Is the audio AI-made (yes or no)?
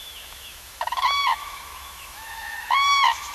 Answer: yes